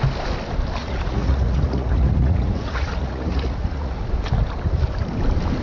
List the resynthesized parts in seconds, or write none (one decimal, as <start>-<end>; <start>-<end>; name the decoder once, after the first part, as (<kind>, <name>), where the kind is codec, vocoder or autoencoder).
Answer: 0.8-4.0 (vocoder, Vocos)